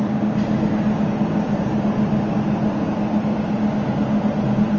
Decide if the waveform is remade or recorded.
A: recorded